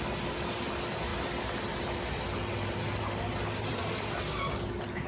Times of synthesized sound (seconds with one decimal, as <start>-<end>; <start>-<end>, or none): none